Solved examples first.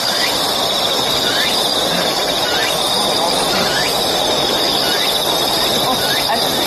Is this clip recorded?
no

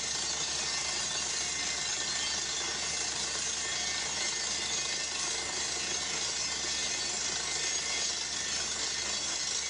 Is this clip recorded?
yes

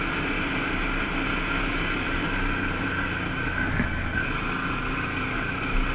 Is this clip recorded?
yes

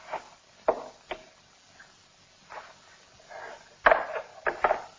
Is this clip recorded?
yes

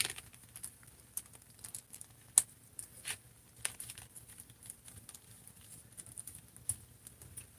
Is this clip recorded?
yes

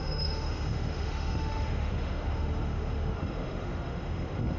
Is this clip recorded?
no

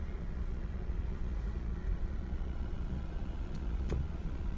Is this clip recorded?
no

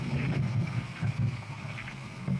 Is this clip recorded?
no